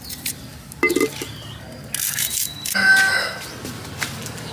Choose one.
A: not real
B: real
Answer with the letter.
B